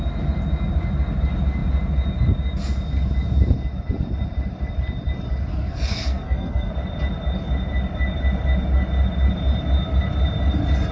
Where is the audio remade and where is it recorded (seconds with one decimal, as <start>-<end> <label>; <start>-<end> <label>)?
0.0-5.5 recorded; 5.5-6.7 remade; 6.7-10.9 recorded